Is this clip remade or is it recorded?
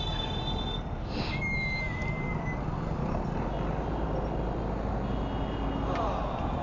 recorded